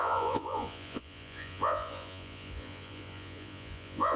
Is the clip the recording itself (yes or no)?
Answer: no